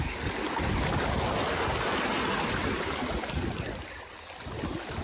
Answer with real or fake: real